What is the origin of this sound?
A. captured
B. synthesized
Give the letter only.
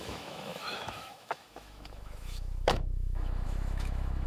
B